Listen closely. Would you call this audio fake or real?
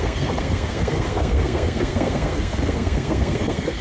fake